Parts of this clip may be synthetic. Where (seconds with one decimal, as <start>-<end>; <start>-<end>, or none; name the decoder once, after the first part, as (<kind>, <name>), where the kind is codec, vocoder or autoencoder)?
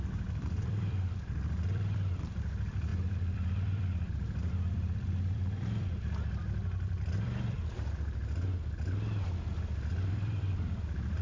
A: 0.0-8.2 (vocoder, BigVGAN v2); 10.1-11.2